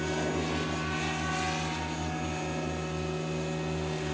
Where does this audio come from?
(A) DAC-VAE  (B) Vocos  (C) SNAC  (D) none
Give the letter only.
D